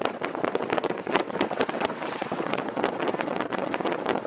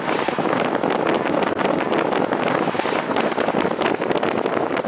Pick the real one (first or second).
second